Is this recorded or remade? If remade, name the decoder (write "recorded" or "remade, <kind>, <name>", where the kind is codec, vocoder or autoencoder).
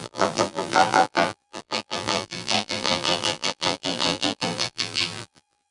remade, vocoder, BigVGAN v2